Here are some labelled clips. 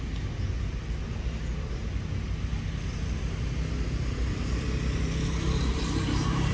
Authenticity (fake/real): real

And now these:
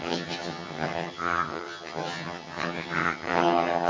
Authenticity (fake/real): fake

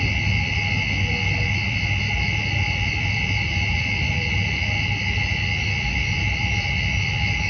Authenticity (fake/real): real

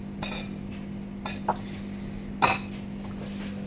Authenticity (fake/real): real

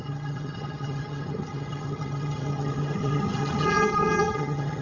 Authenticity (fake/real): fake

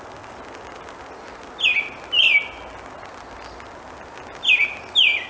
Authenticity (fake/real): real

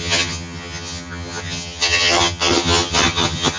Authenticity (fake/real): fake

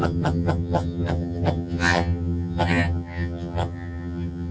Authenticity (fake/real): fake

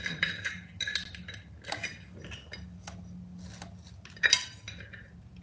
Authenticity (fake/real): real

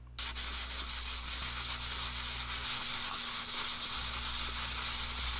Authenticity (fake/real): real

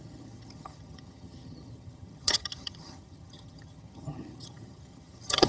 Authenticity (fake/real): fake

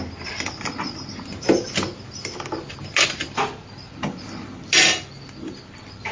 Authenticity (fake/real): real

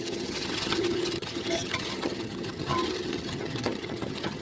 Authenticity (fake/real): fake